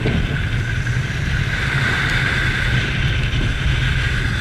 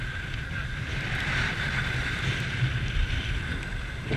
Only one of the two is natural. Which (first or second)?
first